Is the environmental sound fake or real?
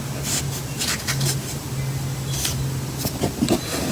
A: real